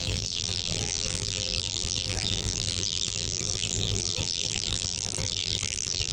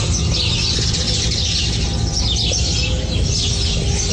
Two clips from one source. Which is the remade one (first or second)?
first